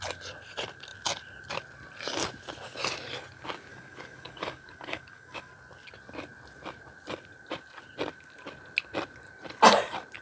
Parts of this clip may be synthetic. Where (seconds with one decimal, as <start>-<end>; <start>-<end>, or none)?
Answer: 3.7-5.5